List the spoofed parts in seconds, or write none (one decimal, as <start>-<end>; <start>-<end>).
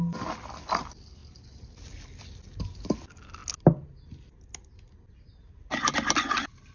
none